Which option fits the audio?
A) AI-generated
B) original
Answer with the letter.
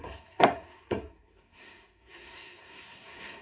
A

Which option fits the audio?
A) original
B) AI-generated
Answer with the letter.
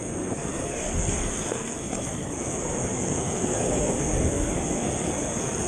B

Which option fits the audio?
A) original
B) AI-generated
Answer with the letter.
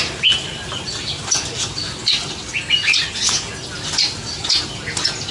A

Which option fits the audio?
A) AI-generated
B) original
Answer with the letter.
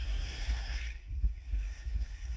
A